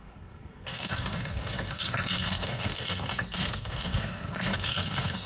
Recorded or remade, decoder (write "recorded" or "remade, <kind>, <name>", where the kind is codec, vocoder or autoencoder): remade, codec, SNAC